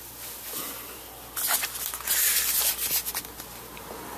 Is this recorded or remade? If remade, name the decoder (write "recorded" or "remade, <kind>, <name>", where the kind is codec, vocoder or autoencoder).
recorded